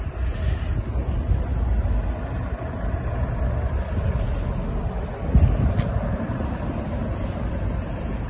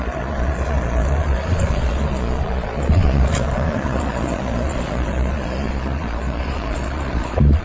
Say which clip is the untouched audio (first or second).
first